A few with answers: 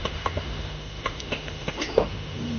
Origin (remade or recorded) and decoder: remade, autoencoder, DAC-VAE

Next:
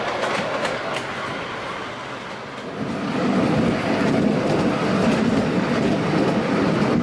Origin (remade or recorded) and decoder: recorded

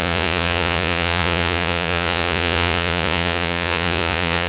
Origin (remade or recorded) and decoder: remade, vocoder, Vocos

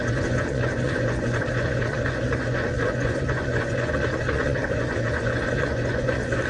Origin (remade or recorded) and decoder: remade, vocoder, Vocos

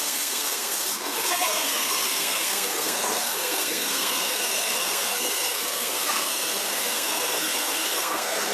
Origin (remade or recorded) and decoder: remade, codec, SNAC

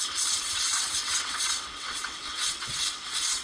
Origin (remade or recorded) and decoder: remade, vocoder, WaveNeXt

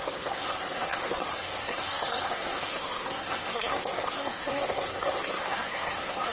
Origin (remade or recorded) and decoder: remade, codec, SNAC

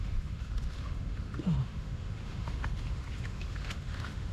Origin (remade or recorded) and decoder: remade, autoencoder, DAC-VAE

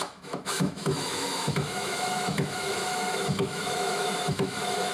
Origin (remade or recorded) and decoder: remade, autoencoder, DAC-VAE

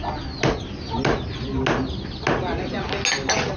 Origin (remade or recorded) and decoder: recorded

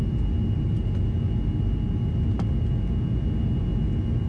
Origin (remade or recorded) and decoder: recorded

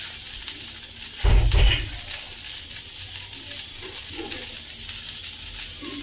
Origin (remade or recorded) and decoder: recorded